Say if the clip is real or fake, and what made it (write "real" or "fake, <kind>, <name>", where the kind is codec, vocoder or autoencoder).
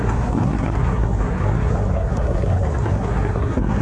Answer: fake, codec, SNAC